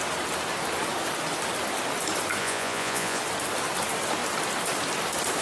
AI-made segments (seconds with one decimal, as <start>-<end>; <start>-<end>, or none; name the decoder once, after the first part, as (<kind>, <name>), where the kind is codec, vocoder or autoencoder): 2.4-3.2 (vocoder, Vocos)